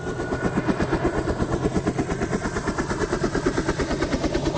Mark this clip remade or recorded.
recorded